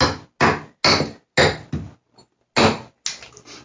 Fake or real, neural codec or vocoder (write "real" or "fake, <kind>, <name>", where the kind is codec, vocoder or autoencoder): real